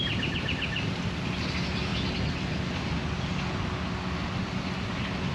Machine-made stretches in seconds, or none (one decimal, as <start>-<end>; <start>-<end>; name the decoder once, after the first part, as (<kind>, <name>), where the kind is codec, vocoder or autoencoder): none